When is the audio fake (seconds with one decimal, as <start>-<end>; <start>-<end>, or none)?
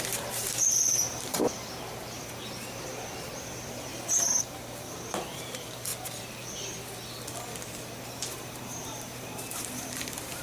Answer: 0.0-3.9; 4.4-5.9; 8.1-10.4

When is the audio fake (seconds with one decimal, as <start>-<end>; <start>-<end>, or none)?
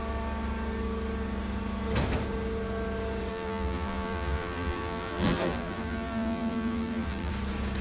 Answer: 3.3-7.3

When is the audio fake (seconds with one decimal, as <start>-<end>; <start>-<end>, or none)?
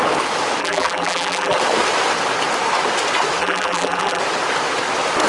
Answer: 0.6-1.6; 3.4-4.2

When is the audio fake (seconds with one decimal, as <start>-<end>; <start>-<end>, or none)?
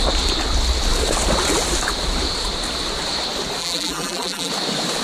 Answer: 3.6-4.5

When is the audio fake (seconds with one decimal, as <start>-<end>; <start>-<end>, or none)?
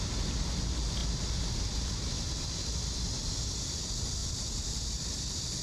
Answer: none